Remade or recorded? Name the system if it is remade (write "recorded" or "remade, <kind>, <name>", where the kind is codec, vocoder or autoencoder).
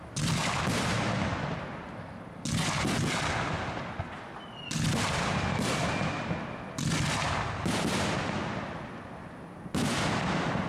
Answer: recorded